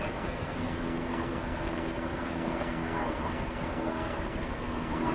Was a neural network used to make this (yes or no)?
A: yes